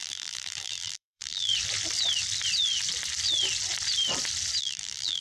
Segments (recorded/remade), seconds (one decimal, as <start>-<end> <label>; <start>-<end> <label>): 0.0-1.5 remade; 1.5-4.6 recorded; 4.6-5.2 remade